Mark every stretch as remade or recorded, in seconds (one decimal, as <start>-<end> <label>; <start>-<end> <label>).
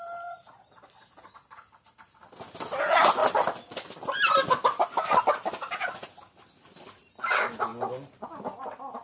0.0-9.0 recorded